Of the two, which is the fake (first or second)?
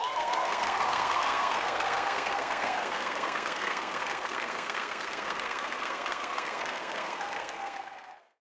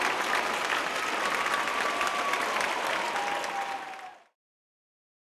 first